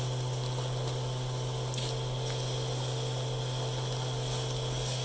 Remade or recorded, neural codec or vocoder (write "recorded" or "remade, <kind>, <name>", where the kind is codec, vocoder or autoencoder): recorded